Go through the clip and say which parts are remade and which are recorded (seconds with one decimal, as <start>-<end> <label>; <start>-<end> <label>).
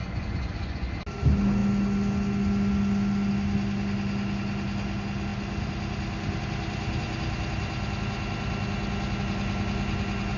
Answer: 0.0-0.9 remade; 0.9-10.4 recorded